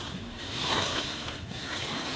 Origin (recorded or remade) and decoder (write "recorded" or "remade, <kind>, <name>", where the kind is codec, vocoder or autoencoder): remade, codec, SNAC